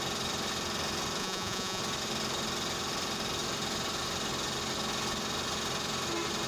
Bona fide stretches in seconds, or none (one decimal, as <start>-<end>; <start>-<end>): 0.0-1.2; 1.8-6.5